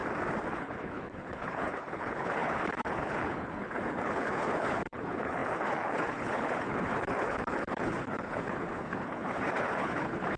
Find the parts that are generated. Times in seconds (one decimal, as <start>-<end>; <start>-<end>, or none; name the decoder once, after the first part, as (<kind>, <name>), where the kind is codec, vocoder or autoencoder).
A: 0.5-10.4 (codec, HILCodec)